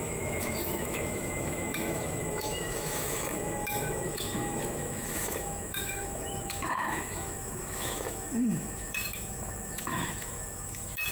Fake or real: fake